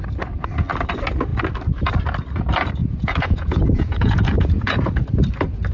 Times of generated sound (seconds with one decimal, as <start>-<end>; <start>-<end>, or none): 2.8-4.9